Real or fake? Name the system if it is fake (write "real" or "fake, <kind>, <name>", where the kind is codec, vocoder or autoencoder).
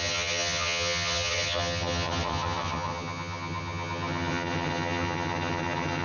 fake, vocoder, HiFi-GAN